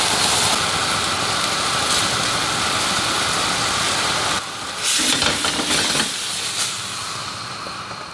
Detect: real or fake real